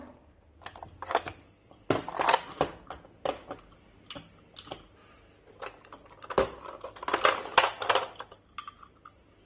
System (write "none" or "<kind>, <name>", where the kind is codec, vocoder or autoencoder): none